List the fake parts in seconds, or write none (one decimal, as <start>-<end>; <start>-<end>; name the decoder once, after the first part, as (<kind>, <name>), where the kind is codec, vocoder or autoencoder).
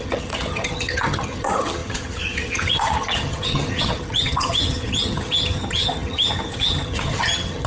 0.0-7.7 (vocoder, HiFi-GAN)